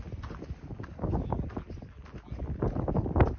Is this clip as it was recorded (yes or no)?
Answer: yes